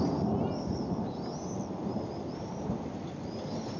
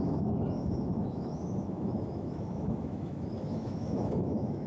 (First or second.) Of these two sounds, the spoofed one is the second